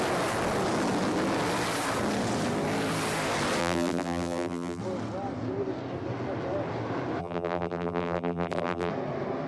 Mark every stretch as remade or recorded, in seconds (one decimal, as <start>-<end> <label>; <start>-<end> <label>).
0.0-3.6 recorded; 3.6-4.8 remade; 4.8-7.2 recorded; 7.2-8.9 remade; 8.9-9.5 recorded